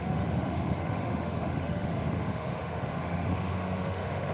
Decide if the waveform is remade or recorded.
remade